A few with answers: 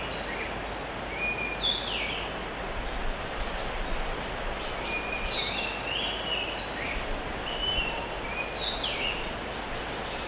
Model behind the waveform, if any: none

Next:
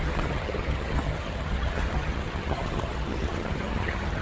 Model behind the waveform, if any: vocoder, HiFi-GAN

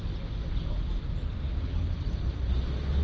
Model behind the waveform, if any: none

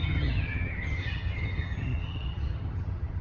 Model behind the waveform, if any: vocoder, HiFi-GAN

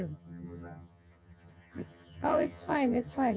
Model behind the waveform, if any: vocoder, HiFi-GAN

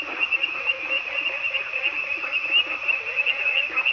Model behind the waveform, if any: none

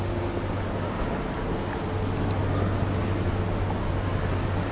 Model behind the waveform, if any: none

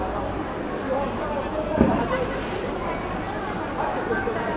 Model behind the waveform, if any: none